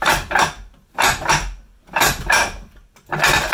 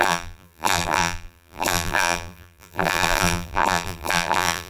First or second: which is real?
first